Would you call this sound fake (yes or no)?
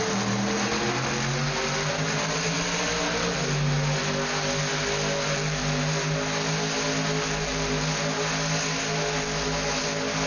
no